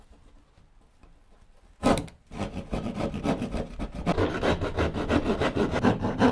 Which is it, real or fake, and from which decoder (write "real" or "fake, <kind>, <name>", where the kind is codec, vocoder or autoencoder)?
real